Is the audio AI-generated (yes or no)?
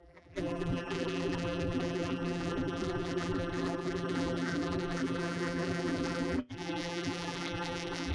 yes